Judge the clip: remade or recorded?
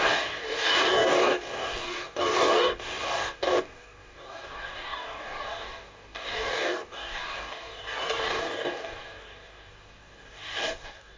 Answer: remade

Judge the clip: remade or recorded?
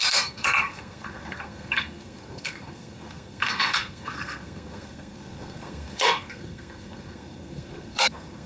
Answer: remade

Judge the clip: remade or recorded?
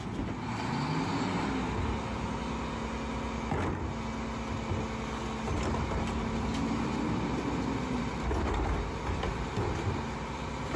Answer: recorded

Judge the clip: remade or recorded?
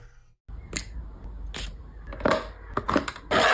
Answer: recorded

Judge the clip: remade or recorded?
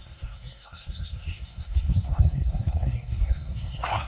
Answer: remade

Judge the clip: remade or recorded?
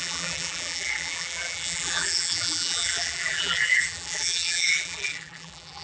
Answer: remade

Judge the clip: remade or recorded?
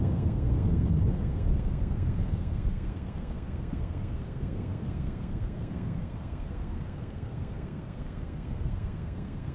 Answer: remade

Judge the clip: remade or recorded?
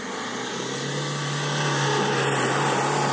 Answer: recorded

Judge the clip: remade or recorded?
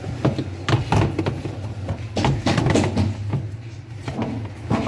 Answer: recorded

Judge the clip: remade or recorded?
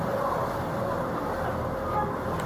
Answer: recorded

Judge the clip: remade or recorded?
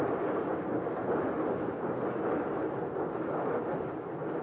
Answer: recorded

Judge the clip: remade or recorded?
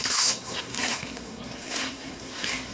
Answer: remade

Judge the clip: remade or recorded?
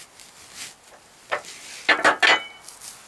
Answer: recorded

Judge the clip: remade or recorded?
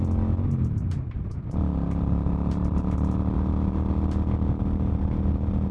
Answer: recorded